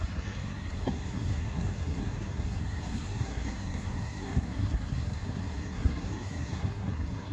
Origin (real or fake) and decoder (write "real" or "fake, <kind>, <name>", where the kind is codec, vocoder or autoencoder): fake, codec, SNAC